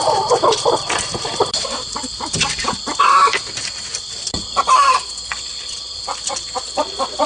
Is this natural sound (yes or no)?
no